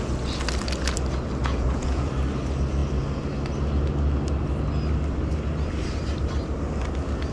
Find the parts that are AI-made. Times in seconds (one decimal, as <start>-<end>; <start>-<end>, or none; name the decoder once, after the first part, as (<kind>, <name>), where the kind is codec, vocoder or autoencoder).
1.4-2.1 (vocoder, Vocos)

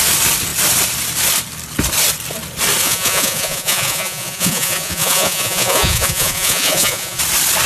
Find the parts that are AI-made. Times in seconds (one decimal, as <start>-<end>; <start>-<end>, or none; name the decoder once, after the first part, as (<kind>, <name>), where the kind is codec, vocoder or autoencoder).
2.8-7.2 (vocoder, Vocos)

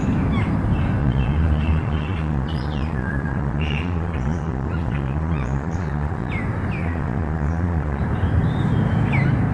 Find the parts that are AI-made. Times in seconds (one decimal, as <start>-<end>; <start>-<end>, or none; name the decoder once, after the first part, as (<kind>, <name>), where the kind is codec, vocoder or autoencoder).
1.0-6.3 (vocoder, Vocos); 6.8-8.0

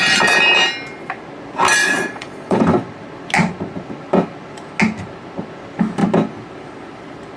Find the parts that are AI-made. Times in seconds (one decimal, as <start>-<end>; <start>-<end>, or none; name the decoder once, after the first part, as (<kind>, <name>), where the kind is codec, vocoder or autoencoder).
1.8-2.6 (vocoder, Vocos)

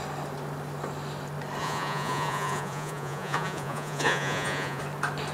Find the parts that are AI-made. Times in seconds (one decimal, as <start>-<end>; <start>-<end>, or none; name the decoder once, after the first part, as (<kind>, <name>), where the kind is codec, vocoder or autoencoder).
1.6-4.8 (vocoder, Vocos)

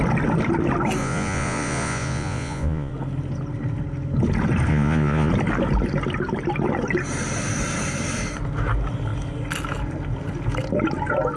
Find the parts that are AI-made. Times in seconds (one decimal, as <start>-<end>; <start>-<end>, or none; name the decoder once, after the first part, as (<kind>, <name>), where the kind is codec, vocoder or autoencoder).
1.0-2.9 (vocoder, Vocos); 4.7-5.3